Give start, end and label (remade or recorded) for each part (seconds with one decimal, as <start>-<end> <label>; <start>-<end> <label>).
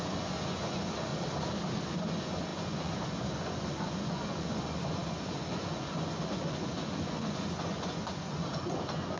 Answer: 0.0-1.1 remade; 1.1-1.9 recorded; 1.9-9.2 remade